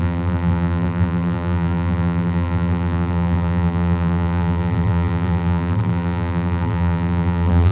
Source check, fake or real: fake